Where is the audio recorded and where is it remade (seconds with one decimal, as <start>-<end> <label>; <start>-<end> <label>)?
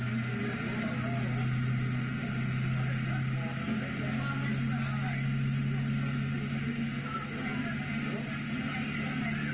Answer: 0.0-9.5 recorded